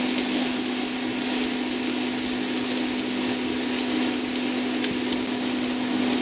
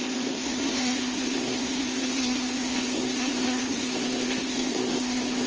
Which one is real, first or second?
first